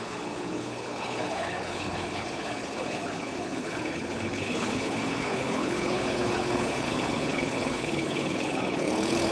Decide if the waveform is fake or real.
fake